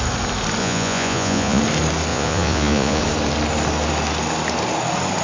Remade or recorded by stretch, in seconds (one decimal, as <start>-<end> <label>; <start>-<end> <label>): 0.0-0.6 recorded; 0.6-1.6 remade; 1.6-2.1 recorded; 2.1-3.0 remade; 3.0-5.2 recorded